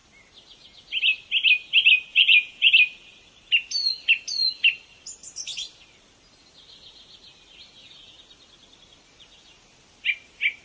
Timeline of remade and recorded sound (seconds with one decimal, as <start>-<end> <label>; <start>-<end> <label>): 0.0-2.1 recorded; 2.1-2.7 remade; 2.7-10.6 recorded